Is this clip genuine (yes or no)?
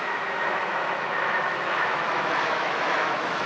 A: no